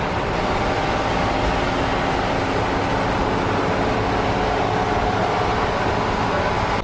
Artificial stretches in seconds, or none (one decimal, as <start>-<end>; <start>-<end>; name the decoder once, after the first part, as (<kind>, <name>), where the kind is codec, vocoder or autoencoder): 1.9-6.0 (vocoder, BigVGAN v2)